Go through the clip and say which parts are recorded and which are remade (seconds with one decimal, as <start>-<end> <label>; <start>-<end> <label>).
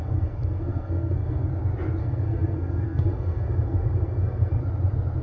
0.0-1.5 remade; 1.5-2.0 recorded; 2.0-4.6 remade; 4.6-5.2 recorded